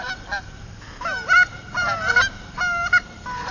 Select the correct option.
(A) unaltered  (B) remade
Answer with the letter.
B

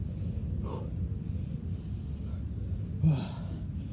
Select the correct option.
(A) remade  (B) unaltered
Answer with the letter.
B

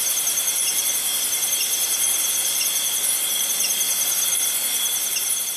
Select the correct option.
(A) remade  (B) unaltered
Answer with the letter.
A